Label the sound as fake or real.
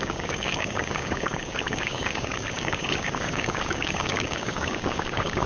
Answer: fake